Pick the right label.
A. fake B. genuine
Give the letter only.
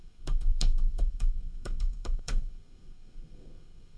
A